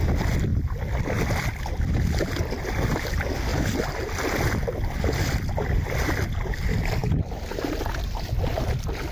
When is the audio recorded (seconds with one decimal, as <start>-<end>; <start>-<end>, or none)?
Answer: 0.0-9.1